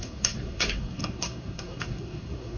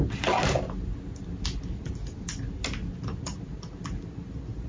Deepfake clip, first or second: first